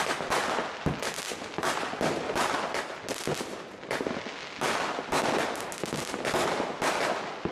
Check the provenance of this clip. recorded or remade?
recorded